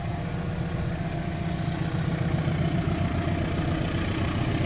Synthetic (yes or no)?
no